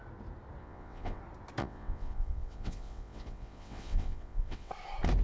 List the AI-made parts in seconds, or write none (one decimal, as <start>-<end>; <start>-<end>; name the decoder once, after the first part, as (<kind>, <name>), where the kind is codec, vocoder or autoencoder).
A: 0.6-1.2 (vocoder, WaveNeXt); 1.6-4.7